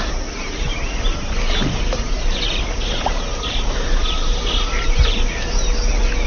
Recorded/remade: recorded